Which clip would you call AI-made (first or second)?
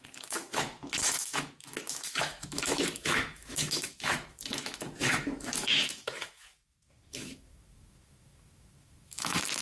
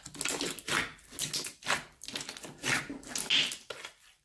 first